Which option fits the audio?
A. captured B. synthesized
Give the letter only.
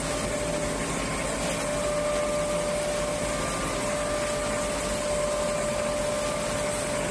A